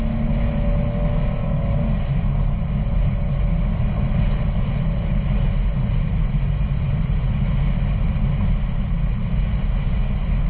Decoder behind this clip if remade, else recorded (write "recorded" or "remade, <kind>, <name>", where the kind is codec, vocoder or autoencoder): recorded